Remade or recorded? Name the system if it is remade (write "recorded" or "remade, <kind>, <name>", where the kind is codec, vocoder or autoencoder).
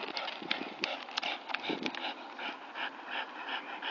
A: recorded